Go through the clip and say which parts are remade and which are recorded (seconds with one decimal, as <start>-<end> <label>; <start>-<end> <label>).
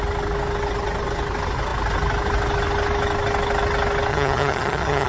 0.0-4.1 recorded; 4.1-5.1 remade